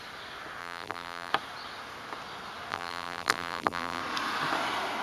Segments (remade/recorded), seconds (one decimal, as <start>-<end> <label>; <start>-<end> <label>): 0.0-0.6 recorded; 0.6-1.3 remade; 1.3-2.7 recorded; 2.7-4.0 remade; 4.0-5.0 recorded